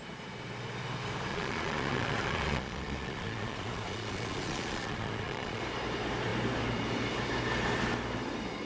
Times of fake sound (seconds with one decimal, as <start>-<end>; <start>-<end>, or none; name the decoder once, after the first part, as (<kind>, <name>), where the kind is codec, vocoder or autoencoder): 1.3-5.6 (vocoder, Vocos)